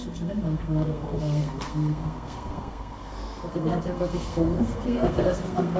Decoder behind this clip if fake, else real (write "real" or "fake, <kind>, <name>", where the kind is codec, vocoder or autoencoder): fake, codec, SNAC